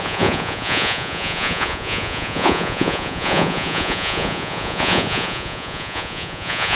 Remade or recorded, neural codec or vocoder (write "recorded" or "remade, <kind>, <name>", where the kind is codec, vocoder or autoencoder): remade, vocoder, Vocos